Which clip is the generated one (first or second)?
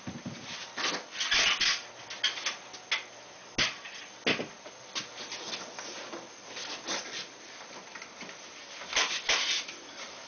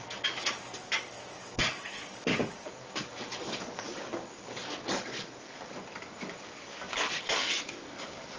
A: second